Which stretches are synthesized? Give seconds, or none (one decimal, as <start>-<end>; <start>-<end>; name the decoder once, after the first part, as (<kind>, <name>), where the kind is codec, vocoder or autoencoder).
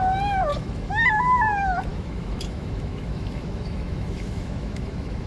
0.5-1.2 (autoencoder, DAC-VAE); 1.9-5.3